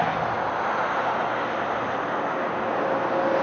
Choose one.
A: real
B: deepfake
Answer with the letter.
A